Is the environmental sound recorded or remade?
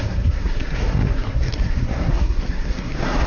remade